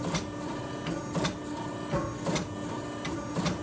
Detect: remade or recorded recorded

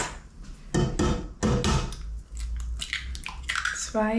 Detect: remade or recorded recorded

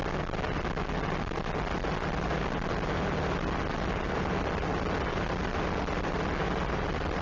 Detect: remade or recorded recorded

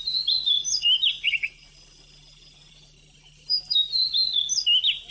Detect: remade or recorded recorded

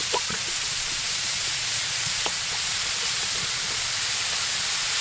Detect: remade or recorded remade